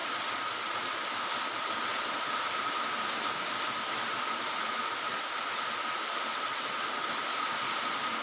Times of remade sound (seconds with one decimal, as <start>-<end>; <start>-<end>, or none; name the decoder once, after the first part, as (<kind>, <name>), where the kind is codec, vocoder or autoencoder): none